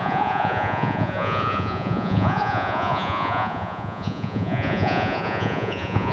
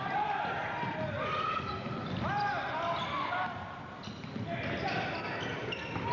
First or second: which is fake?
first